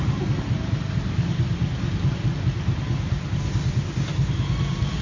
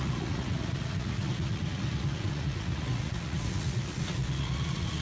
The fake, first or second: second